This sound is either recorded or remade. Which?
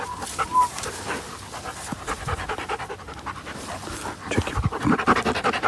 recorded